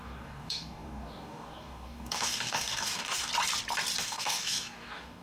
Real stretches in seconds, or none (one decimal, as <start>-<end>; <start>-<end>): 3.3-4.0